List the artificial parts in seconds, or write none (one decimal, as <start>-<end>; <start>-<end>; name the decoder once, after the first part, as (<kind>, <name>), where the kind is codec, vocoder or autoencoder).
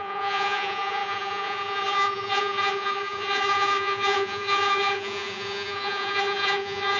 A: 0.0-7.0 (vocoder, Vocos)